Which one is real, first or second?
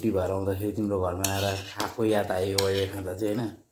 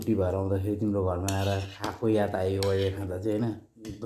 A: second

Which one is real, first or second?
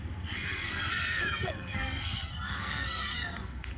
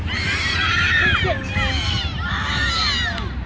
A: second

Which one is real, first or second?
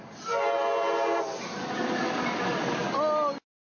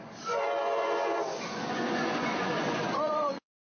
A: first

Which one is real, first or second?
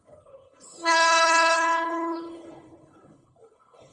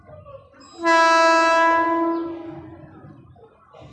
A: second